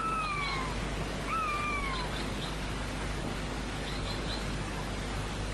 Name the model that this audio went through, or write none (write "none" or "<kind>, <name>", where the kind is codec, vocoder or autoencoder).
codec, DAC